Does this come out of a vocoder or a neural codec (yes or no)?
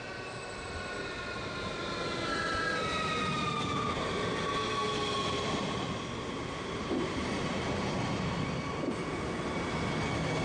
no